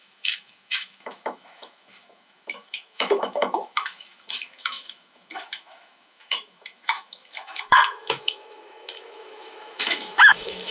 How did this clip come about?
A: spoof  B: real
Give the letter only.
A